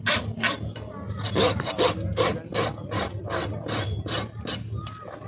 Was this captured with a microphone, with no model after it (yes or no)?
yes